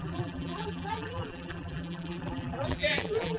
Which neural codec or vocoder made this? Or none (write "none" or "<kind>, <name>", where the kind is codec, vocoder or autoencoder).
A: vocoder, BigVGAN v2